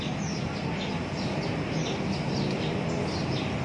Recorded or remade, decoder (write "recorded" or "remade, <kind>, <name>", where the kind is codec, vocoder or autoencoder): recorded